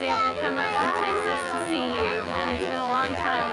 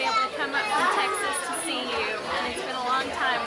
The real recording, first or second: second